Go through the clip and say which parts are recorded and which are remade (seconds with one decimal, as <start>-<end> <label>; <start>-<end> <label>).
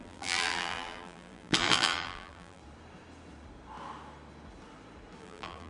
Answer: 0.0-2.6 remade; 2.6-5.2 recorded; 5.2-5.7 remade